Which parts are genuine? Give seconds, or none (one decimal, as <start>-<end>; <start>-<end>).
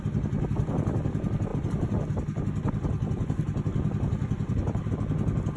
0.0-5.6